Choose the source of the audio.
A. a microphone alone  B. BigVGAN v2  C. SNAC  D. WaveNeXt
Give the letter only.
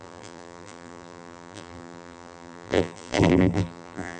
B